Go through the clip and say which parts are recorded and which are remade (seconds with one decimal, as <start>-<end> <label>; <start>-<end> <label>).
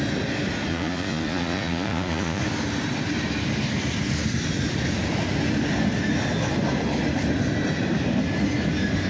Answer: 0.0-0.7 recorded; 0.7-2.4 remade; 2.4-9.1 recorded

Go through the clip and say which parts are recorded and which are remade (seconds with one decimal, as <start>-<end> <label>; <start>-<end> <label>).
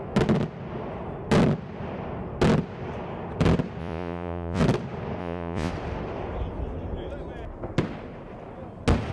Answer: 0.0-3.8 recorded; 3.8-4.6 remade; 4.6-5.2 recorded; 5.2-5.7 remade; 5.7-9.1 recorded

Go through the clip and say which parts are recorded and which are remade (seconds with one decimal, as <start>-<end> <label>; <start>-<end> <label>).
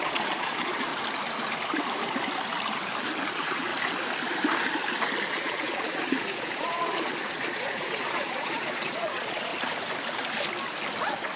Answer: 0.0-0.9 remade; 0.9-3.3 recorded; 3.3-3.7 remade; 3.7-5.3 recorded; 5.3-9.5 remade; 9.5-11.0 recorded; 11.0-11.4 remade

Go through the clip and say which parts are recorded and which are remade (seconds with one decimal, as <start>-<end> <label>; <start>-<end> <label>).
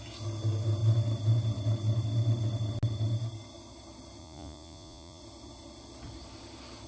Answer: 0.0-4.2 recorded; 4.2-5.2 remade; 5.2-6.9 recorded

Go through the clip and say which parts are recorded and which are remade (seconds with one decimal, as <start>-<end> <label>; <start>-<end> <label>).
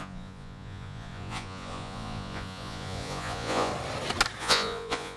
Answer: 0.0-3.7 remade; 3.7-4.4 recorded; 4.4-5.2 remade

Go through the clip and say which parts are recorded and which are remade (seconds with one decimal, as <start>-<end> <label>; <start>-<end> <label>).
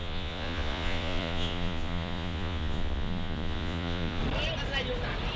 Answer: 0.0-4.2 remade; 4.2-5.4 recorded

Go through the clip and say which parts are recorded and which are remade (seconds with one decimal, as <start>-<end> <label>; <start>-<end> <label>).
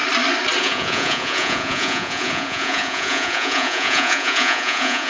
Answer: 0.0-0.6 recorded; 0.6-5.1 remade